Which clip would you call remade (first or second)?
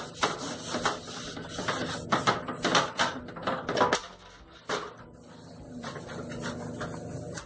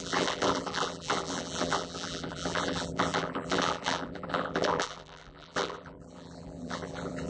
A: second